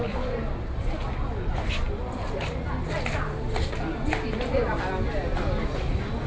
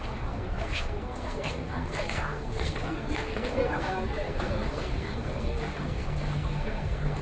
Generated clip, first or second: second